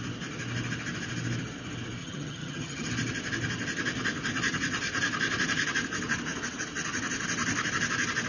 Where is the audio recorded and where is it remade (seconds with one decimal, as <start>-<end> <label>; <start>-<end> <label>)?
0.0-2.0 recorded; 2.0-2.9 remade; 2.9-8.3 recorded